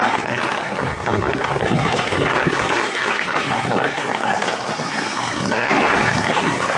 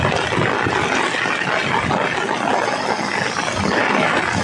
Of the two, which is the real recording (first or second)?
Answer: second